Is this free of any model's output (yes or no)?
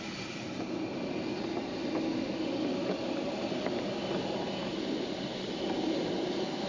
yes